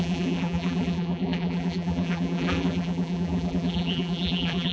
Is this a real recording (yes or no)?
no